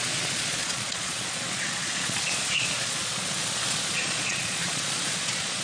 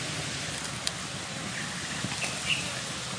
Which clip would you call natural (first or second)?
second